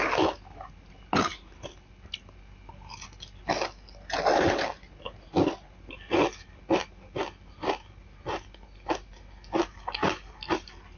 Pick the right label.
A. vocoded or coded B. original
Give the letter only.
B